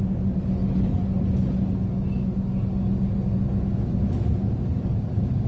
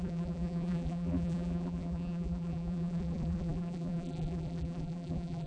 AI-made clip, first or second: second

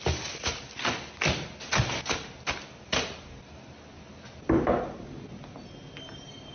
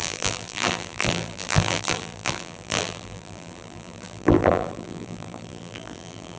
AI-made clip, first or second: second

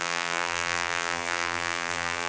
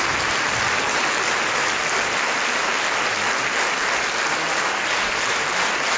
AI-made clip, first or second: first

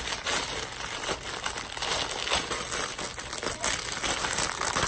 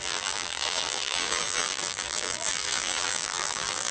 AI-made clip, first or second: second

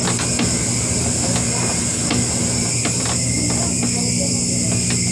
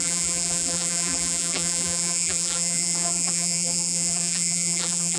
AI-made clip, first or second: second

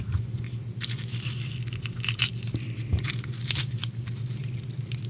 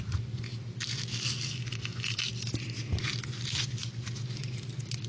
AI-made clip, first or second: first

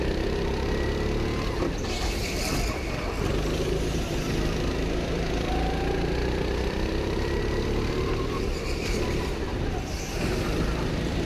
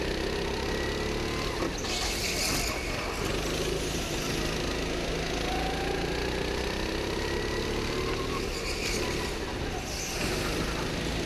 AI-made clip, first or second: first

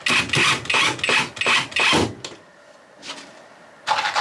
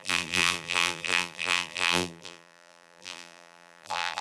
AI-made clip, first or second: second